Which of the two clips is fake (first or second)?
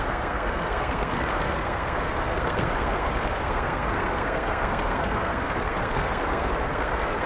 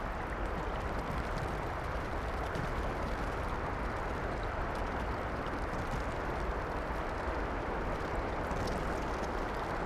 first